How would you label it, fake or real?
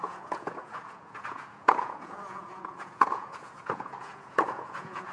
fake